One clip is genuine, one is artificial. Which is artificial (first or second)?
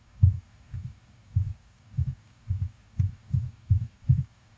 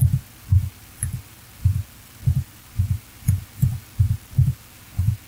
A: first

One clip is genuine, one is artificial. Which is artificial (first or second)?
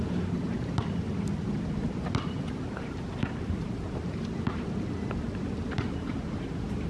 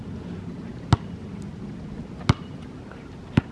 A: first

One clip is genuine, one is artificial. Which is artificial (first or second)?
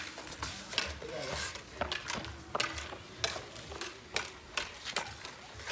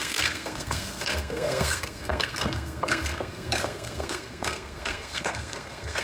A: second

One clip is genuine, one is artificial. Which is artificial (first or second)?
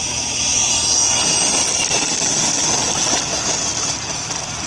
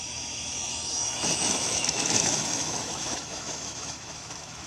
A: second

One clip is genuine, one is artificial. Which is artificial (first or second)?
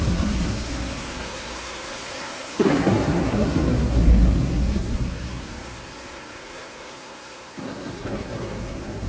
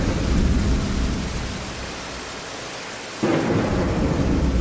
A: first